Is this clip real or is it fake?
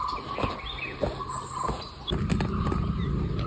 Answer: real